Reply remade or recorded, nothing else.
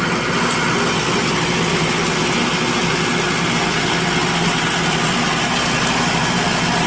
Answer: recorded